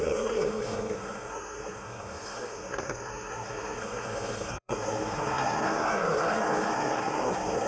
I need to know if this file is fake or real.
fake